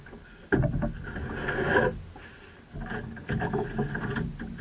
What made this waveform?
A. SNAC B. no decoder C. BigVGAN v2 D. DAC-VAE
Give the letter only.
B